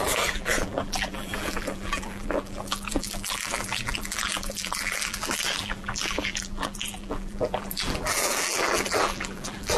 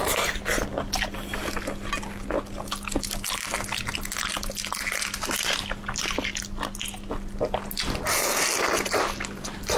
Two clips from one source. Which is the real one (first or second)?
second